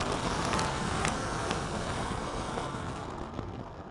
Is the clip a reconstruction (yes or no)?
yes